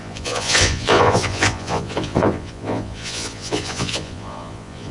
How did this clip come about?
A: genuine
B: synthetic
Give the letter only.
B